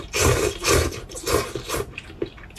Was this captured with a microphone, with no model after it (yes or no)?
yes